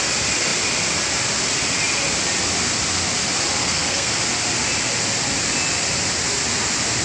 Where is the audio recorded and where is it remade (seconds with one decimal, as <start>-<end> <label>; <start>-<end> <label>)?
0.0-3.6 recorded; 3.6-4.1 remade; 4.1-7.0 recorded